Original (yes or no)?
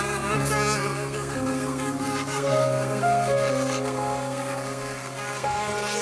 no